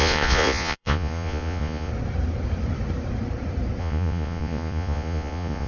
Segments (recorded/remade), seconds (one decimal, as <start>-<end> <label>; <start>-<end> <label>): 0.0-1.9 remade; 1.9-3.8 recorded; 3.8-5.7 remade